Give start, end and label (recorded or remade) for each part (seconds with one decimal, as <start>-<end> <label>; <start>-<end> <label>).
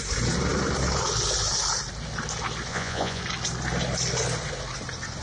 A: 0.0-2.7 recorded; 2.7-3.2 remade; 3.2-5.2 recorded